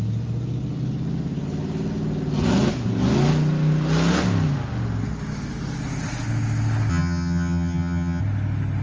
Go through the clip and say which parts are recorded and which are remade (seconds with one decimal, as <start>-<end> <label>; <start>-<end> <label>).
0.0-6.9 recorded; 6.9-8.2 remade; 8.2-8.8 recorded